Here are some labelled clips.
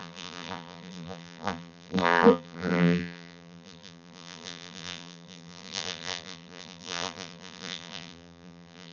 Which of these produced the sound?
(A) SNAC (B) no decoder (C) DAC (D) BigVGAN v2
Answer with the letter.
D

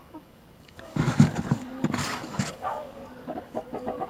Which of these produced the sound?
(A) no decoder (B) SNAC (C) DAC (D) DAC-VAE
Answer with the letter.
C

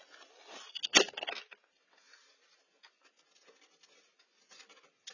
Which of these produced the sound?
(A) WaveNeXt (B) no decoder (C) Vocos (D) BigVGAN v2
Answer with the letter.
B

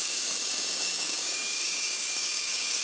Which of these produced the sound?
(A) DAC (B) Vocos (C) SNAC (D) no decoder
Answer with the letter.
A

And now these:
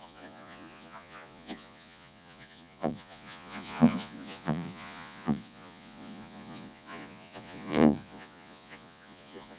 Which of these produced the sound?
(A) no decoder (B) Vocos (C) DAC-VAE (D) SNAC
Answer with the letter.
B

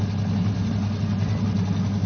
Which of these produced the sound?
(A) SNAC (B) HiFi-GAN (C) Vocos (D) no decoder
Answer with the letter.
D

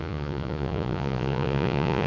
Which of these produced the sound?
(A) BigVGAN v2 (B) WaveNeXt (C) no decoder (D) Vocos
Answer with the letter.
D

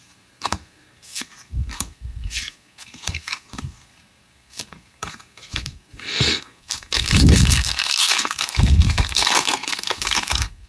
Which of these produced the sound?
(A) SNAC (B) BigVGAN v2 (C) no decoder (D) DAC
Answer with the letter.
A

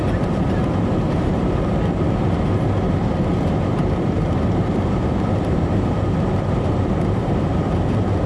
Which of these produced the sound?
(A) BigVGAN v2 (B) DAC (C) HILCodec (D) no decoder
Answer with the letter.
A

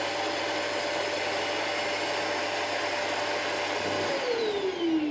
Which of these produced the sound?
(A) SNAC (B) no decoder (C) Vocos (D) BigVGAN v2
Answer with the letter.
B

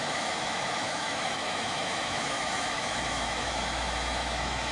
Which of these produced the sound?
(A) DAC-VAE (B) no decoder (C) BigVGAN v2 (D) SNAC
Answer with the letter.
A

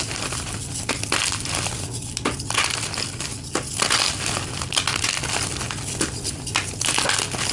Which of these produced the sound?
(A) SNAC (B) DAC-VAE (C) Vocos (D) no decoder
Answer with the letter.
D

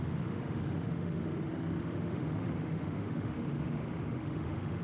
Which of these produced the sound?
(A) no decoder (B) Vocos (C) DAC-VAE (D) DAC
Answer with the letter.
C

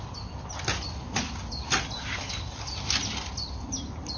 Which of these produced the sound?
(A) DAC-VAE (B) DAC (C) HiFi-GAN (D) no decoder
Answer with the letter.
D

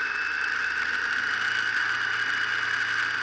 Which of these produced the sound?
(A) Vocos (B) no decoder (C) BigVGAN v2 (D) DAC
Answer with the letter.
B